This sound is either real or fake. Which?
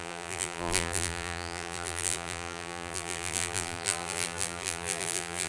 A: fake